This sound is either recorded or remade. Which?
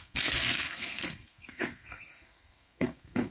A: remade